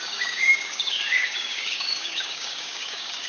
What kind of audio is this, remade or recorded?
remade